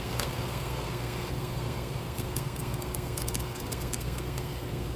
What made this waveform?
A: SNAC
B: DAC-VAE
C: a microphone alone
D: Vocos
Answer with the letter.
A